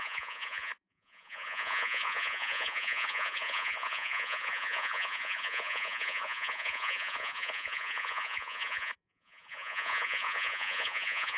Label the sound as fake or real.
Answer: fake